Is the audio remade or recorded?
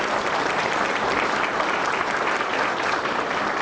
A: recorded